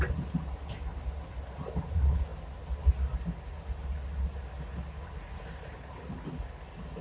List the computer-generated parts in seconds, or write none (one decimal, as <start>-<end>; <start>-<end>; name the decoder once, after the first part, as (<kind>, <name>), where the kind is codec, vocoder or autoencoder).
none